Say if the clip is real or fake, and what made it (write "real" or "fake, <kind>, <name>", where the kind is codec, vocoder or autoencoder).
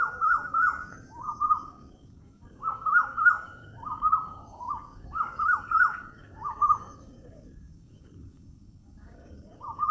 fake, codec, DAC